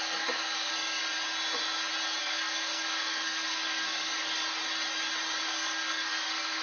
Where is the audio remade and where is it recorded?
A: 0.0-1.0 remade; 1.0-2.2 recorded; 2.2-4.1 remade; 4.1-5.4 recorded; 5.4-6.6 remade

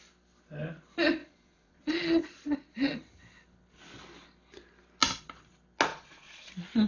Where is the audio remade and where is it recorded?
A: 0.0-1.2 recorded; 1.2-2.8 remade; 2.8-5.9 recorded; 5.9-6.5 remade; 6.5-6.9 recorded

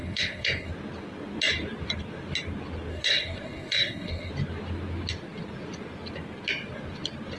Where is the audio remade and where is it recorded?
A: 0.0-0.7 remade; 0.7-2.9 recorded; 2.9-4.3 remade; 4.3-7.4 recorded

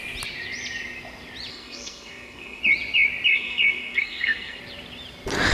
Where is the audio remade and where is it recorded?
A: 0.0-1.5 recorded; 1.5-2.6 remade; 2.6-3.3 recorded; 3.3-4.6 remade; 4.6-5.5 recorded

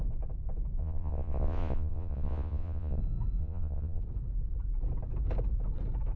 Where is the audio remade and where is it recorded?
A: 0.0-0.8 recorded; 0.8-3.0 remade; 3.0-3.4 recorded; 3.4-4.0 remade; 4.0-6.2 recorded

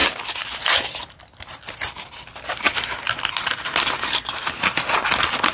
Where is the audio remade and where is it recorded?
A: 0.0-5.5 recorded